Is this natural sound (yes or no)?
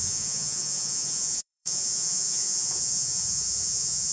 no